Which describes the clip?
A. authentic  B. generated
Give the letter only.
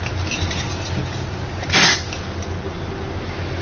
A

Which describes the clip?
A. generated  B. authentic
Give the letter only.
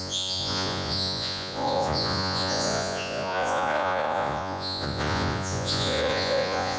A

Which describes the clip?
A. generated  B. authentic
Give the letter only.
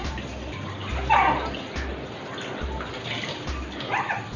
B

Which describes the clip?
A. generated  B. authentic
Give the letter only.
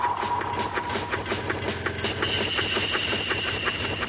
B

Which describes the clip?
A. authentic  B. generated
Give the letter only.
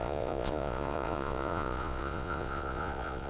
B